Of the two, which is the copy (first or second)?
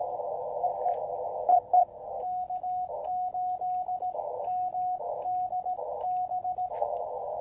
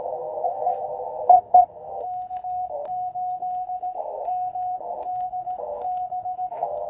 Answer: second